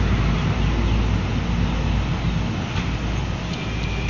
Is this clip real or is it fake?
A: real